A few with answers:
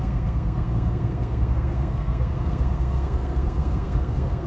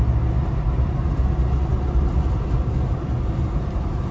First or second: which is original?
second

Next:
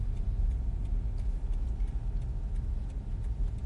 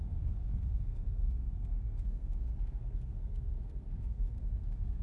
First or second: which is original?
first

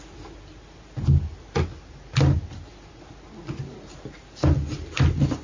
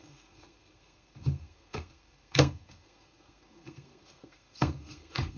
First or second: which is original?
first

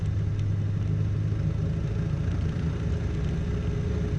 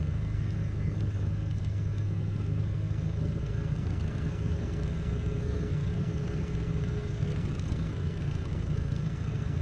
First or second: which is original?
first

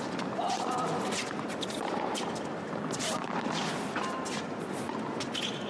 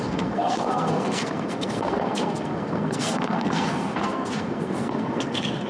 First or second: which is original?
first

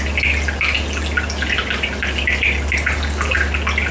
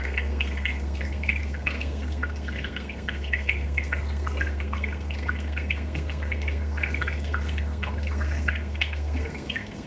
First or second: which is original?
first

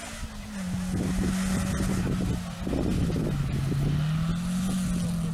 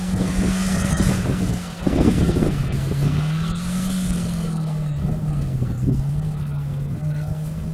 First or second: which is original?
first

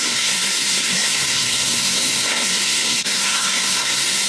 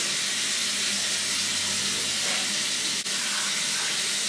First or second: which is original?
second